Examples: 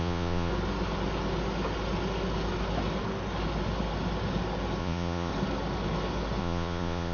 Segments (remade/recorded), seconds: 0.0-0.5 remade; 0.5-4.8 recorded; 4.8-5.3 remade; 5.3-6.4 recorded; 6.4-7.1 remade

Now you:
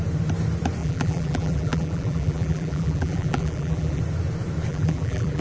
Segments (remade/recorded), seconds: 0.0-0.8 recorded; 0.8-4.0 remade; 4.0-4.7 recorded; 4.7-5.4 remade

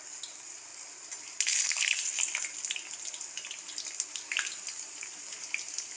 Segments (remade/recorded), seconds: 0.0-6.0 recorded

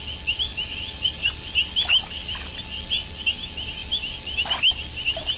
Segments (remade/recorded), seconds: 0.0-5.4 recorded

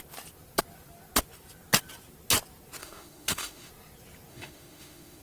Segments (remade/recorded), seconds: 0.0-2.8 recorded; 2.8-3.7 remade; 3.7-4.3 recorded; 4.3-5.2 remade

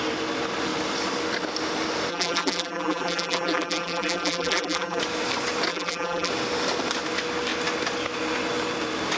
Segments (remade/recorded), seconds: 0.0-2.1 recorded; 2.1-5.0 remade; 5.0-5.7 recorded; 5.7-6.3 remade; 6.3-9.2 recorded

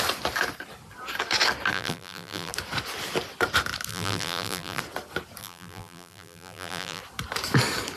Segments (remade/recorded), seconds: 0.0-1.7 recorded; 1.7-2.5 remade; 2.5-3.9 recorded; 3.9-4.8 remade; 4.8-5.4 recorded; 5.4-7.0 remade; 7.0-8.0 recorded